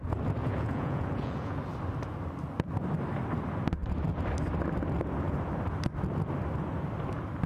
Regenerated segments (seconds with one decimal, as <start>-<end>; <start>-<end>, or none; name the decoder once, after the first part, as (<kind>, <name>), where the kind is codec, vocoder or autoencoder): 0.4-1.6 (vocoder, Vocos)